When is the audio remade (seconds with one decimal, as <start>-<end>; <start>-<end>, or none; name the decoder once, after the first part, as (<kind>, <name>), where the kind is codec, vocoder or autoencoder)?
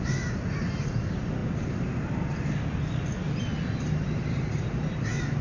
none